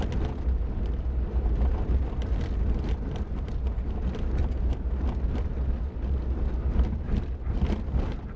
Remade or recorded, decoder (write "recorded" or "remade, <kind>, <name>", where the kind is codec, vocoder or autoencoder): recorded